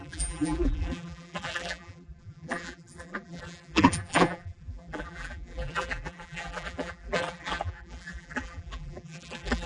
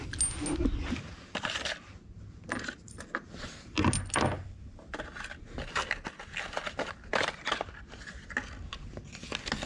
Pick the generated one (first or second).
first